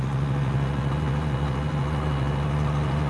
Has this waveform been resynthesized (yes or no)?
yes